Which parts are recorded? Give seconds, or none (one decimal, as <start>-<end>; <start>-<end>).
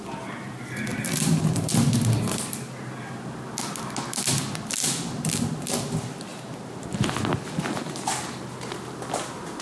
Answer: 0.0-0.9; 1.7-9.6